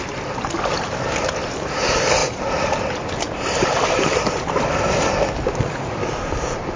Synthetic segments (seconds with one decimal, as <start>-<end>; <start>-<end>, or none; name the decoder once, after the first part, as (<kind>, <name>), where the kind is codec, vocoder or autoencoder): none